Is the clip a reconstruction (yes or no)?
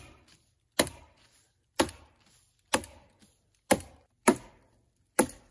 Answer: no